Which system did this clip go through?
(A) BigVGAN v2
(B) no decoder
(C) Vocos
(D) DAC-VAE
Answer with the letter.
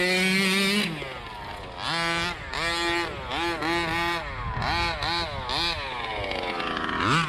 B